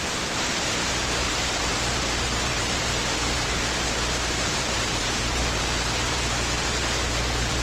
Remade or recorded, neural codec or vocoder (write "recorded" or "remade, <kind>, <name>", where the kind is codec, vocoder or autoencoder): remade, vocoder, BigVGAN v2